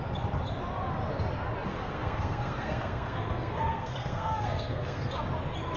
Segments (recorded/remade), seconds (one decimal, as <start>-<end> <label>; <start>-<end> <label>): 0.0-1.7 recorded; 1.7-5.2 remade; 5.2-5.8 recorded